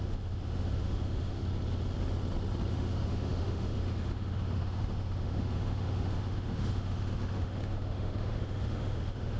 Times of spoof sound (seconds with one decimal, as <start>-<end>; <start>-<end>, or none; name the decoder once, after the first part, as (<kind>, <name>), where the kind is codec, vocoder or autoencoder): 0.0-1.4 (autoencoder, DAC-VAE); 2.7-9.4